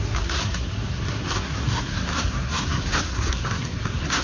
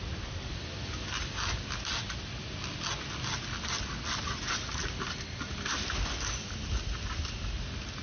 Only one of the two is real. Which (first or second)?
second